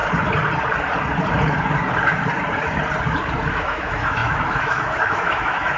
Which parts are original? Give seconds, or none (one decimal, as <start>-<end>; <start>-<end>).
0.0-3.5